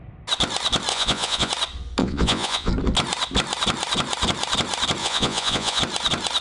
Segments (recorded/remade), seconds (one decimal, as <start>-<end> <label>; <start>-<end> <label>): 0.0-0.9 recorded; 0.9-1.5 remade; 1.5-2.0 recorded; 2.0-2.7 remade; 2.7-5.0 recorded; 5.0-5.8 remade; 5.8-6.4 recorded

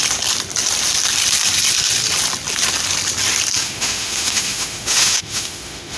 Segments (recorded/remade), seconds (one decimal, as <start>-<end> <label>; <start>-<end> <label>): 0.0-3.6 recorded; 3.6-6.0 remade

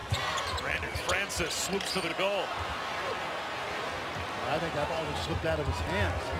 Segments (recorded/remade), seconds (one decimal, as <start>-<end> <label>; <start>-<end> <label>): 0.0-0.6 remade; 0.6-6.4 recorded

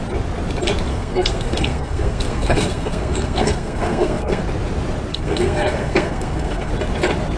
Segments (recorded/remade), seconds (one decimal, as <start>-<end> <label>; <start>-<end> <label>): 0.0-0.9 recorded; 0.9-4.4 remade; 4.4-5.1 recorded; 5.1-6.7 remade; 6.7-7.4 recorded

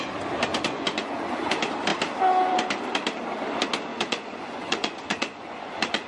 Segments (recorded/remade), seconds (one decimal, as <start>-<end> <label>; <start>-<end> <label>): 0.0-0.5 recorded; 0.5-1.5 remade; 1.5-3.9 recorded; 3.9-6.1 remade